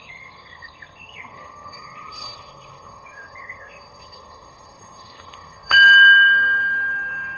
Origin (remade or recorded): remade